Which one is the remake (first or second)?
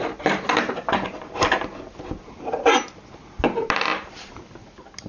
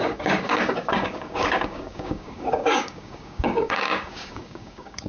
second